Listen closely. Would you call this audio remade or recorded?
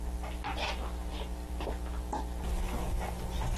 recorded